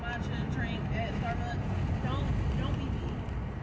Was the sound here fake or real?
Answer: real